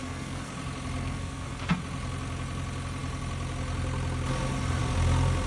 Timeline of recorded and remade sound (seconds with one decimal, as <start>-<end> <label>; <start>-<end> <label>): 0.0-0.5 remade; 0.5-1.0 recorded; 1.0-1.8 remade; 1.8-5.5 recorded